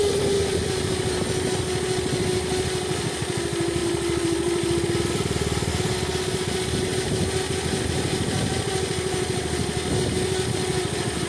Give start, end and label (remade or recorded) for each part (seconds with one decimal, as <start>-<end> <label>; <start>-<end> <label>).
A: 0.0-3.8 recorded; 3.8-5.7 remade; 5.7-11.3 recorded